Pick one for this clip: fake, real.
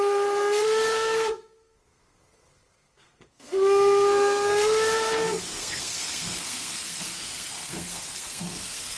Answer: fake